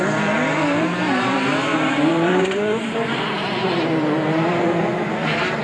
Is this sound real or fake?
fake